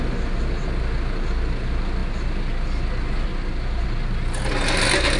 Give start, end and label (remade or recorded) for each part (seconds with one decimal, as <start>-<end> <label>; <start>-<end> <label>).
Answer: 0.0-5.2 recorded